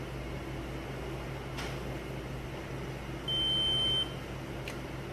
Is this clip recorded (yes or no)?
yes